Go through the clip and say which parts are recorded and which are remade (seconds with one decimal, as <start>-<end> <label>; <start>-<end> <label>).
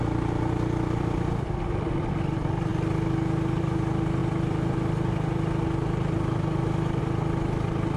0.0-8.0 recorded